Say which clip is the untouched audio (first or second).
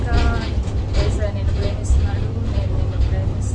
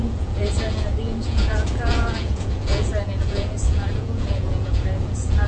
first